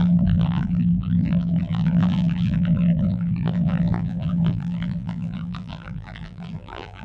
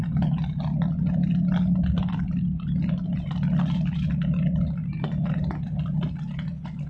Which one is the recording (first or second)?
second